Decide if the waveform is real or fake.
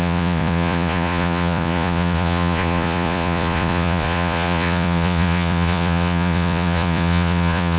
fake